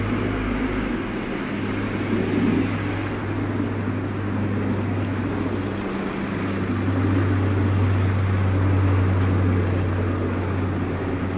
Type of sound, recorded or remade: recorded